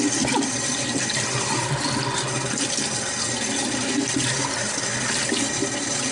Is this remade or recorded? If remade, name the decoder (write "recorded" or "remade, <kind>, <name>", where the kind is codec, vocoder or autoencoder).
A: recorded